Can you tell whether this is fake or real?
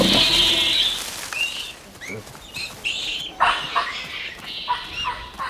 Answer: real